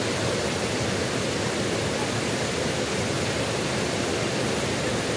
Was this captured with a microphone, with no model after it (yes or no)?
yes